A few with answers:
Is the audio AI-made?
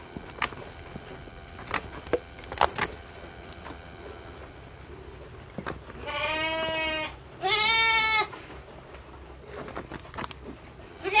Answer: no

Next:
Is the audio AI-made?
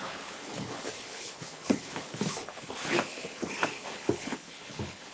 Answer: yes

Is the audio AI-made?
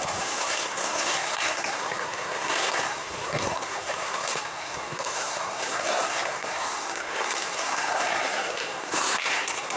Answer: yes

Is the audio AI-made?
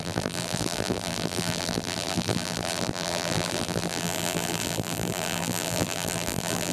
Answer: yes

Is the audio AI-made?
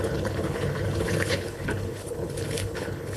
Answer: yes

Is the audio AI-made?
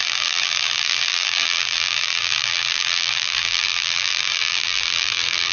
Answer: yes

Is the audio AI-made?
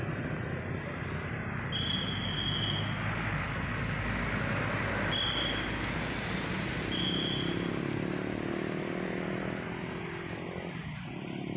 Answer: no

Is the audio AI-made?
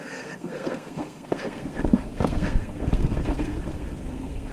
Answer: yes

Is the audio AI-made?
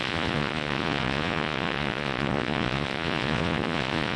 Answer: yes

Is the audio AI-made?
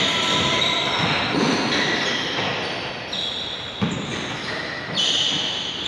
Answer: no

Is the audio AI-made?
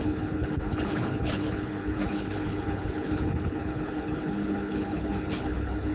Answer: yes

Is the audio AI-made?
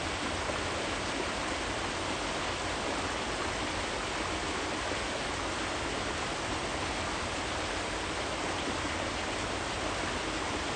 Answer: no